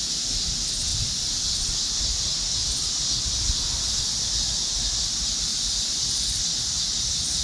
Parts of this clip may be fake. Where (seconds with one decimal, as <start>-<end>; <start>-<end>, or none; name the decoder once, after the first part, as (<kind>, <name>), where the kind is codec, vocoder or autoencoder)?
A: 5.5-6.4 (vocoder, BigVGAN v2)